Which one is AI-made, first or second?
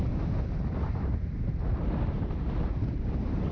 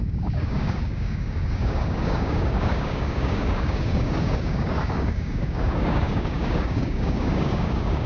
second